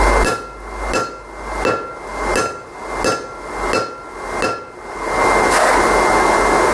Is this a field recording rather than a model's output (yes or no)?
yes